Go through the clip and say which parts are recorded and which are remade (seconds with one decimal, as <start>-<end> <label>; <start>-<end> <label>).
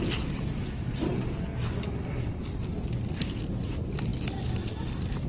0.0-5.3 recorded